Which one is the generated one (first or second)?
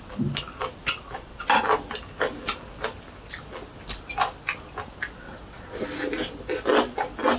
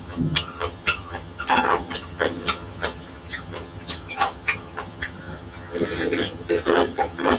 second